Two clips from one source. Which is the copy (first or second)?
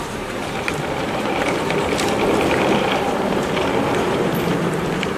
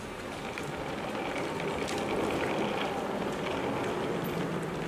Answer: first